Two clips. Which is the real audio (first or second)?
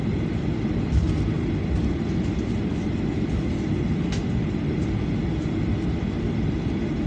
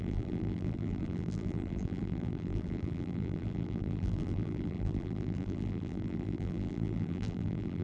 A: first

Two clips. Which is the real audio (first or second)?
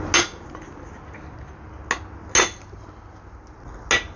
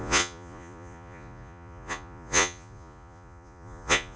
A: first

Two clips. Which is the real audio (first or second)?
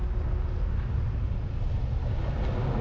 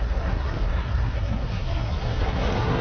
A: first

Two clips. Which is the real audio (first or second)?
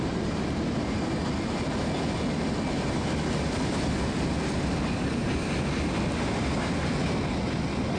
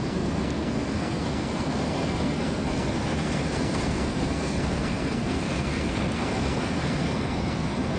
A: first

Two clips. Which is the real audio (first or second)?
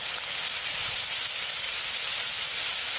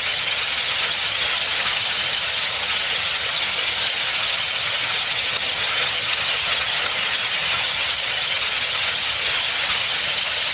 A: first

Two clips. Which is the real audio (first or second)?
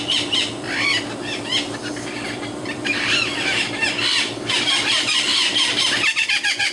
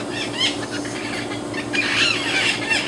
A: second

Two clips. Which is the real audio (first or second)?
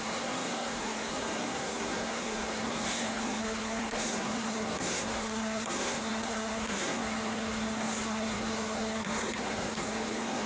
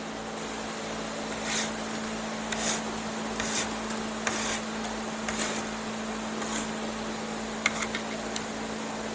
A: second